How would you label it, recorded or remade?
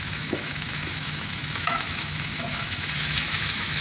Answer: remade